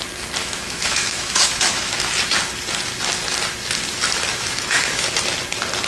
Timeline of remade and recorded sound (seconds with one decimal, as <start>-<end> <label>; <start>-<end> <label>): 0.0-0.4 recorded; 0.4-2.1 remade; 2.1-4.3 recorded; 4.3-5.1 remade; 5.1-5.9 recorded